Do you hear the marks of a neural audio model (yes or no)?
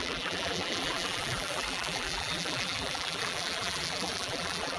yes